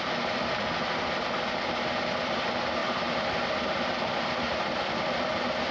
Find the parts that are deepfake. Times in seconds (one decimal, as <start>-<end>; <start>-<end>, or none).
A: 2.8-3.5